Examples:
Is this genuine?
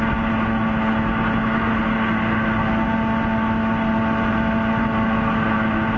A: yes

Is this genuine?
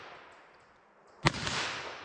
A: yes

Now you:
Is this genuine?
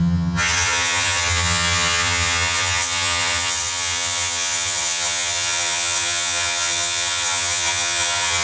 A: no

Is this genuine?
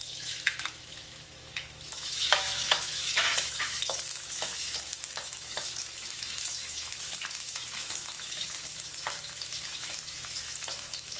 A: no